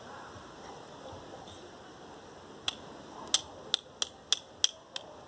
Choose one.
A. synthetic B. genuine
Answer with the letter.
B